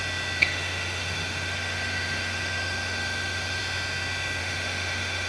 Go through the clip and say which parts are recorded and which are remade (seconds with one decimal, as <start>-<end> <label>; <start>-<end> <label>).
0.0-0.4 recorded; 0.4-3.6 remade; 3.6-4.4 recorded; 4.4-5.3 remade